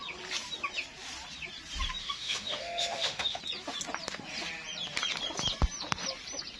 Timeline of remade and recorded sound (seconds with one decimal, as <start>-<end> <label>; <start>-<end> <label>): 0.0-2.0 recorded; 2.0-3.4 remade; 3.4-6.6 recorded

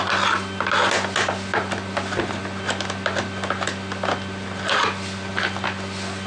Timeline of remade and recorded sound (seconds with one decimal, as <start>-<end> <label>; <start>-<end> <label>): 0.0-6.3 recorded

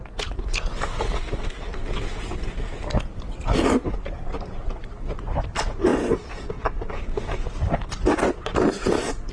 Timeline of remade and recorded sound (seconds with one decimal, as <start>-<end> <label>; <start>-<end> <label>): 0.0-9.3 recorded

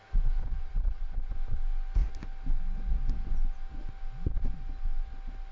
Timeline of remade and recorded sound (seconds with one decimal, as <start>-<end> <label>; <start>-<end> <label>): 0.0-0.5 recorded; 0.5-1.3 remade; 1.3-5.5 recorded

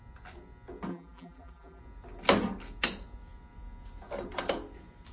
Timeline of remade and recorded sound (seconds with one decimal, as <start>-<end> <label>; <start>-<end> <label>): 0.0-0.9 recorded; 0.9-1.8 remade; 1.8-5.1 recorded

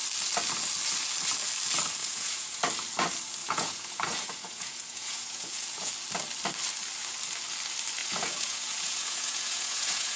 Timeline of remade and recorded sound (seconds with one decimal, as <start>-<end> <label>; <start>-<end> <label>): 0.0-2.0 recorded; 2.0-2.6 remade; 2.6-3.4 recorded; 3.4-5.9 remade; 5.9-8.0 recorded; 8.0-10.2 remade

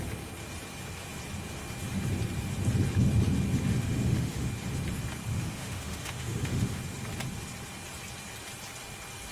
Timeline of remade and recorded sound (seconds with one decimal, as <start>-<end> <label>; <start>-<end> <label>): 0.0-3.7 recorded; 3.7-4.5 remade; 4.5-5.3 recorded; 5.3-6.8 remade; 6.8-9.3 recorded

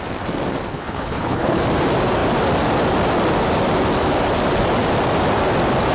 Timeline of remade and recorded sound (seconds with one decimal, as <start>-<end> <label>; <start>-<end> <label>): 0.0-0.7 recorded; 0.7-1.6 remade; 1.6-5.9 recorded